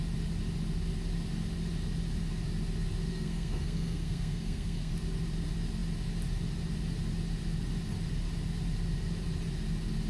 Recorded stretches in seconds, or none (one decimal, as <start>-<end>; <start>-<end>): 0.0-3.1; 4.9-10.1